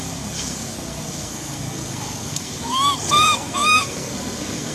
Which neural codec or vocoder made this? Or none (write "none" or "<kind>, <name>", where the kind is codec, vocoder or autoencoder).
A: codec, SNAC